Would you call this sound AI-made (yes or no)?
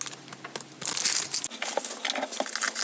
no